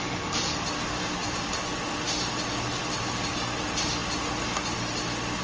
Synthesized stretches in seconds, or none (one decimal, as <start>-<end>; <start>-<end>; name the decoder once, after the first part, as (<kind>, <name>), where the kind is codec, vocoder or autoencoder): none